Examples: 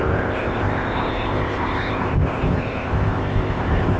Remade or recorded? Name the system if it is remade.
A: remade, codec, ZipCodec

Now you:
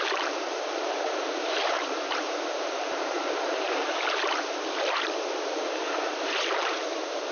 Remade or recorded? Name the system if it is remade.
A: remade, vocoder, BigVGAN v2